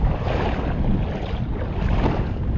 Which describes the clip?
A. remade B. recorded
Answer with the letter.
B